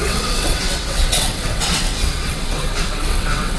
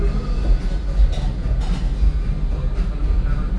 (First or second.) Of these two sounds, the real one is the second